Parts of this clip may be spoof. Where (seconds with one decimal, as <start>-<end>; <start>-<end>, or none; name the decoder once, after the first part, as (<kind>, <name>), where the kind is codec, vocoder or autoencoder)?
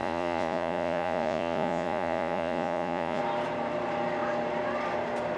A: 0.0-3.2 (vocoder, Vocos)